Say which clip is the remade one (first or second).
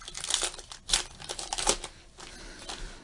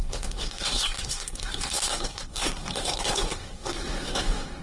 second